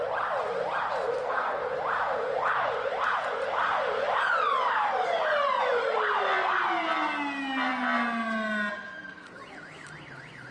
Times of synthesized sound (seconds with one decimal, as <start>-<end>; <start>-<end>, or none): 1.1-1.6